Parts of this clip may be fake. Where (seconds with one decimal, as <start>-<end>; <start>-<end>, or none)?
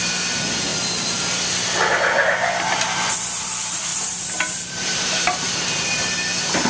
3.9-5.5